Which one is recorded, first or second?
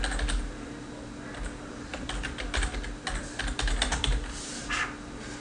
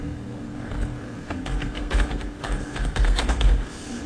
first